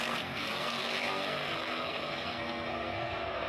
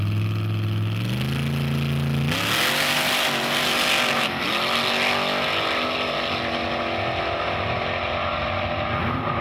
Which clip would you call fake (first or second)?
first